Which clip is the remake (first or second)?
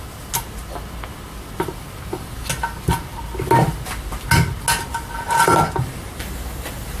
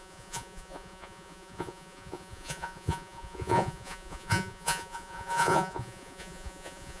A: second